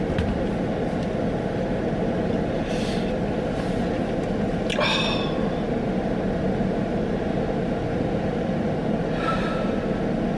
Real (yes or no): yes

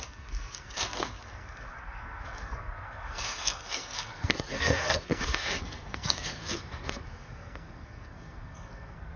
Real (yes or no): no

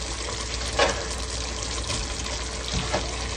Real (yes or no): yes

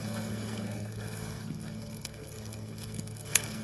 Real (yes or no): no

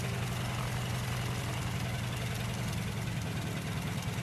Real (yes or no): yes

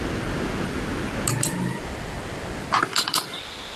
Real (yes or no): yes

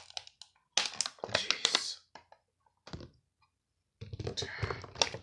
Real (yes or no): yes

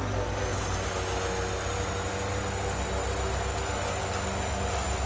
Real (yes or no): yes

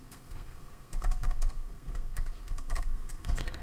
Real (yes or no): no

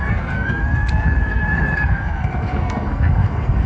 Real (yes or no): no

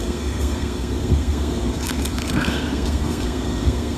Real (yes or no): no